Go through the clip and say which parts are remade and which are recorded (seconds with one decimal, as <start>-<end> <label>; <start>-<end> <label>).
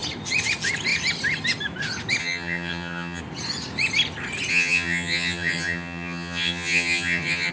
0.0-2.2 recorded; 2.2-3.2 remade; 3.2-4.5 recorded; 4.5-7.5 remade